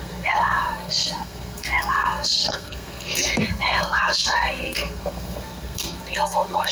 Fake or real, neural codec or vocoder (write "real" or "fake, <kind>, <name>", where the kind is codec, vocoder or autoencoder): fake, codec, SNAC